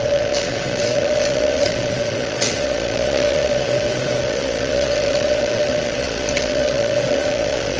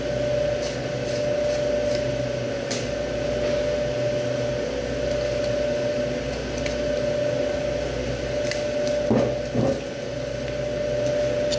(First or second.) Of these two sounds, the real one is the second